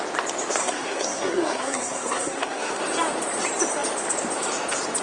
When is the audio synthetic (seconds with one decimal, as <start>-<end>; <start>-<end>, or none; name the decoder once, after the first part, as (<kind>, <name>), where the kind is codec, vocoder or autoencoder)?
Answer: 0.6-2.8 (codec, SNAC)